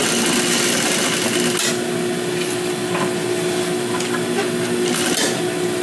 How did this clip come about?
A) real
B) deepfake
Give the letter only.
A